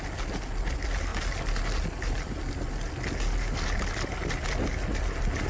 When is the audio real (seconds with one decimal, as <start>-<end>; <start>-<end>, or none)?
0.0-5.5